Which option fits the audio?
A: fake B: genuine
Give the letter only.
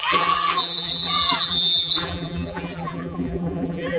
A